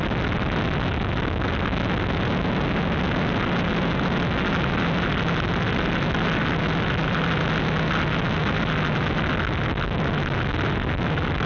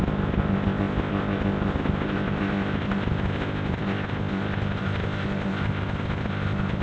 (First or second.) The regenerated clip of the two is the second